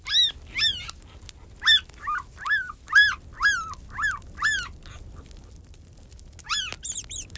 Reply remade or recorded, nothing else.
recorded